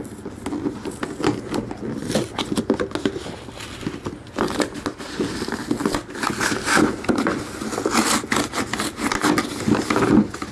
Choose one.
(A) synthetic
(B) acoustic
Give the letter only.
B